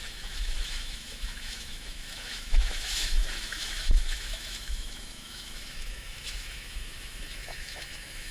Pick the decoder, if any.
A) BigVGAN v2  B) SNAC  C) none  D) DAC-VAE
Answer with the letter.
D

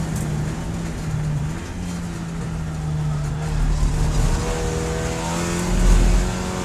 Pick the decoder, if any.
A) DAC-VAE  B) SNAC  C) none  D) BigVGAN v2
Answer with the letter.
C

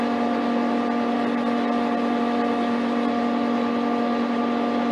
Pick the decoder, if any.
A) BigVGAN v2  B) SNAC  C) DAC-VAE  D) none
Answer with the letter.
D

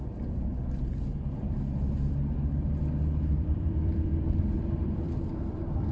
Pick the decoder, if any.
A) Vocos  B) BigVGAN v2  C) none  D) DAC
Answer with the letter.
B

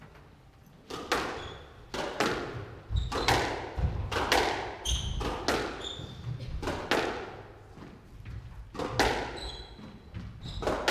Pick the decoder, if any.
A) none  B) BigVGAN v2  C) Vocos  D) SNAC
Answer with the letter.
A